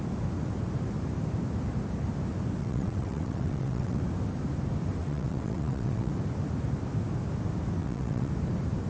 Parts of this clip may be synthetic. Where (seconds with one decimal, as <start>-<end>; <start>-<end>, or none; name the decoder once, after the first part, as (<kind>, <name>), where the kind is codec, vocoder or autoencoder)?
2.6-4.0 (vocoder, WaveNeXt); 5.0-6.1; 7.8-8.3